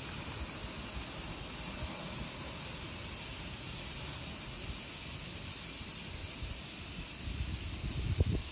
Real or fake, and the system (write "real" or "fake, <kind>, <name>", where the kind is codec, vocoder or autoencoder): real